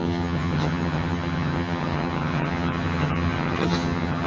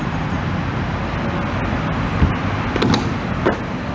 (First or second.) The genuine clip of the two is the second